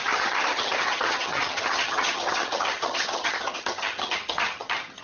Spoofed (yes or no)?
yes